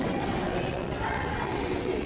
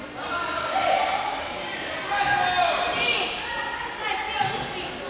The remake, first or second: first